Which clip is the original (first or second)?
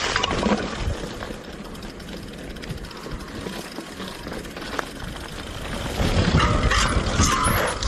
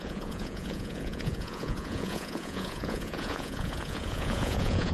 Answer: first